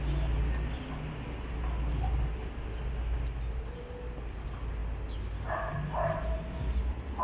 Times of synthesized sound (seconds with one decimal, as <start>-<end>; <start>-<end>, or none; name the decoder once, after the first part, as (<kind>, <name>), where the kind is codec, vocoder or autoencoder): none